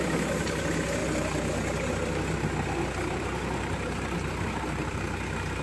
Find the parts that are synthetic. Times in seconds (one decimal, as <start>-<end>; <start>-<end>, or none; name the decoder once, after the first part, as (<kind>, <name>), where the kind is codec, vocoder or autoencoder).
none